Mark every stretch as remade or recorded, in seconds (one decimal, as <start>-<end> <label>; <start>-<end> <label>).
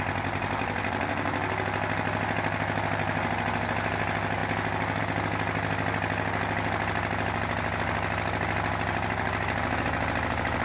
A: 0.0-10.6 recorded